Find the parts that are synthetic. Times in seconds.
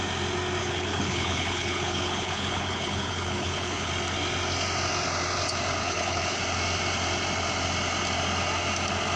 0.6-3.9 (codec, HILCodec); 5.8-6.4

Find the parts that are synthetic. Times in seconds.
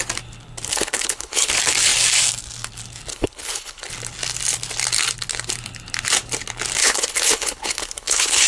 0.7-1.5 (codec, HILCodec); 3.1-3.9; 6.8-8.5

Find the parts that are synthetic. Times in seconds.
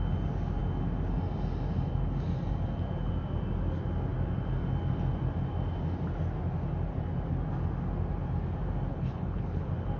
8.9-9.6 (codec, HILCodec)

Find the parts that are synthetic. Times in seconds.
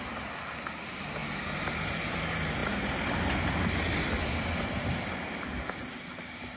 none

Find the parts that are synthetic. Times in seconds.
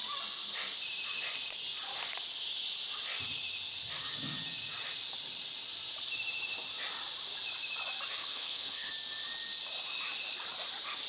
8.2-8.9 (codec, HILCodec)